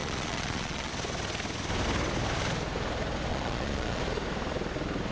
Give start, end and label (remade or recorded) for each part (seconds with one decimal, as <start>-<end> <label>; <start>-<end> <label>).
0.0-0.9 remade; 0.9-3.3 recorded; 3.3-4.0 remade; 4.0-5.1 recorded